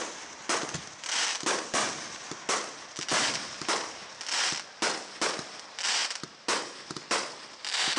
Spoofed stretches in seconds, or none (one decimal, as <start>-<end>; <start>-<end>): none